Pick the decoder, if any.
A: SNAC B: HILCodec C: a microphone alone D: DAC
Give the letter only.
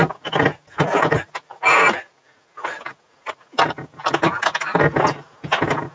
C